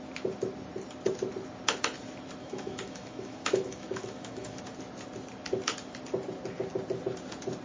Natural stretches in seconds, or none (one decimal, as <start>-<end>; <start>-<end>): 0.0-2.4; 4.6-7.6